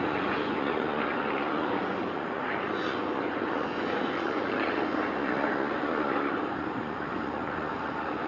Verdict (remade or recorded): remade